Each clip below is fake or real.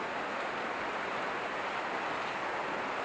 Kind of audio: real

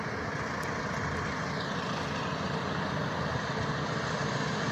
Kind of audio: real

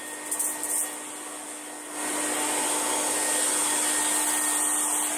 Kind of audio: real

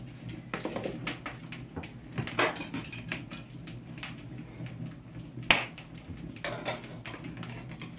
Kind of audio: real